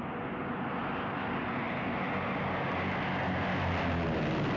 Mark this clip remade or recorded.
recorded